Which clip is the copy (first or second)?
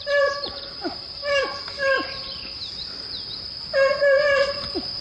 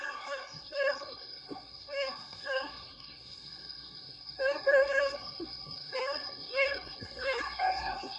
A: second